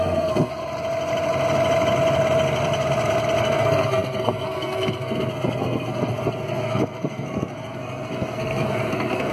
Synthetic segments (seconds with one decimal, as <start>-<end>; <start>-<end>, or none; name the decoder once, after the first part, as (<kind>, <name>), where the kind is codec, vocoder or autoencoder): 0.0-0.6 (codec, SNAC); 3.4-9.3